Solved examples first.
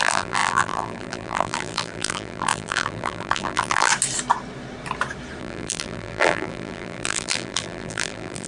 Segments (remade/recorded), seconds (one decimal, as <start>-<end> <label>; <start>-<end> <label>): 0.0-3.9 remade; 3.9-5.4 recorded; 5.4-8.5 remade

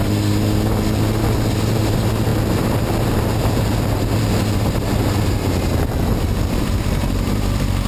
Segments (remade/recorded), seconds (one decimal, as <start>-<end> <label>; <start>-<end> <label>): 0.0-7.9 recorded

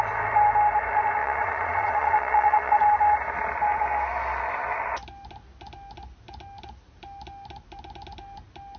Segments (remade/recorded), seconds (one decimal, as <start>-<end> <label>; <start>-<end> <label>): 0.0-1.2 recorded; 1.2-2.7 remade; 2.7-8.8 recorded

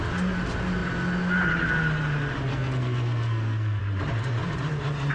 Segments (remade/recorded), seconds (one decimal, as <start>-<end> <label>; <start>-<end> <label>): 0.0-2.5 recorded; 2.5-3.8 remade; 3.8-5.1 recorded

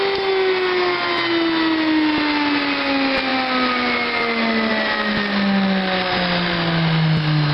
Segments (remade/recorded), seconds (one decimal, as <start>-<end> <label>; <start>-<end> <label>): 0.0-7.5 recorded